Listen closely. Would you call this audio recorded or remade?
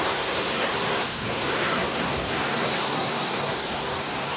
remade